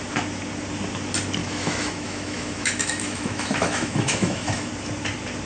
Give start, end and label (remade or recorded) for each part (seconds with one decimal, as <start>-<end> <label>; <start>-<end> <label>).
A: 0.0-1.4 recorded; 1.4-4.7 remade; 4.7-5.5 recorded